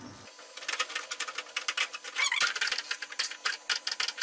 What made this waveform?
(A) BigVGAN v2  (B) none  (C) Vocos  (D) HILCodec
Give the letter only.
B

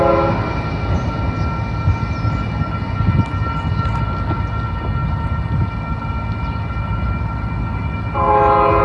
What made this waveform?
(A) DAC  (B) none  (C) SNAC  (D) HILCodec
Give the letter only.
B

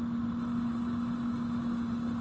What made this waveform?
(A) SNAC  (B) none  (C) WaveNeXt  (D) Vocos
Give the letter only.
B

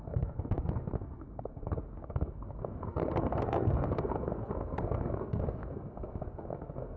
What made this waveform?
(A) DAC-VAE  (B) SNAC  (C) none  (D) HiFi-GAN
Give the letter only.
B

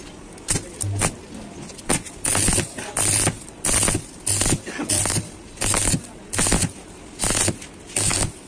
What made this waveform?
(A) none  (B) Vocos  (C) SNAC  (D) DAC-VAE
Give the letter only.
A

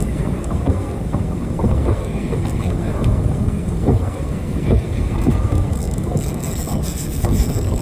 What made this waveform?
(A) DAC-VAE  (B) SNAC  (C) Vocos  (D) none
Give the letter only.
B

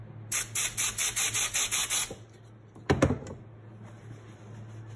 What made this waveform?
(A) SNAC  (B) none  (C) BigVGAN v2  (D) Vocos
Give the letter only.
B